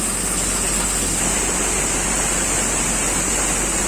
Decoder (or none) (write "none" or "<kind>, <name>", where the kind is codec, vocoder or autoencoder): none